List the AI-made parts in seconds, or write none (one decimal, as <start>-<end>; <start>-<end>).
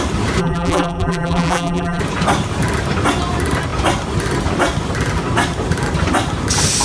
0.4-2.0